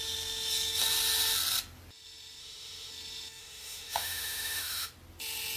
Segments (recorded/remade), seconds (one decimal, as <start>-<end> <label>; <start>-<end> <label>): 0.0-2.4 recorded; 2.4-2.9 remade; 2.9-3.4 recorded; 3.4-4.9 remade; 4.9-5.6 recorded